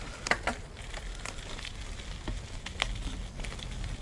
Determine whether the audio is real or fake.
real